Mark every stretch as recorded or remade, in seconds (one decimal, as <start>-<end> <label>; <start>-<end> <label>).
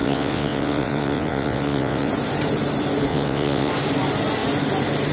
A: 0.0-2.1 remade; 2.1-3.1 recorded; 3.1-3.7 remade; 3.7-5.1 recorded